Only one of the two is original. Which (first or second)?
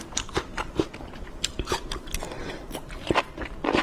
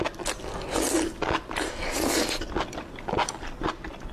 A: second